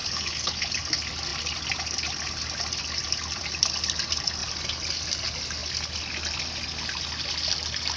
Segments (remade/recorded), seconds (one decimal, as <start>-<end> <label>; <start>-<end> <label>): 0.0-0.8 remade; 0.8-8.0 recorded